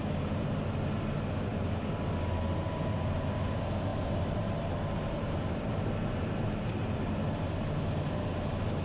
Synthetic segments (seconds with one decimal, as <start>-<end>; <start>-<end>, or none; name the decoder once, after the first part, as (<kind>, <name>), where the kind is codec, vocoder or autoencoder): 3.9-6.6 (vocoder, BigVGAN v2)